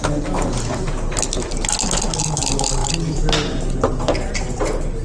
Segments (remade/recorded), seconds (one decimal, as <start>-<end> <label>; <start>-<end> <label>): 0.0-5.0 recorded